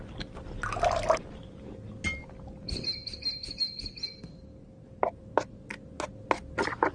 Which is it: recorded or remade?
recorded